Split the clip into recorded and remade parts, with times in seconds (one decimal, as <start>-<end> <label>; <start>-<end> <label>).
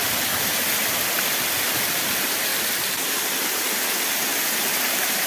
0.0-5.3 recorded